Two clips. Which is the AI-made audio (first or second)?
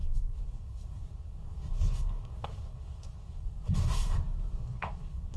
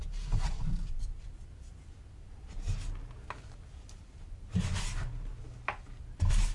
first